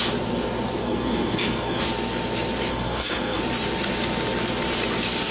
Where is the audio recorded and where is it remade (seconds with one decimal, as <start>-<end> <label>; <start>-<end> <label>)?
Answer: 0.0-0.8 recorded; 0.8-1.8 remade; 1.8-2.7 recorded; 2.7-3.4 remade; 3.4-5.3 recorded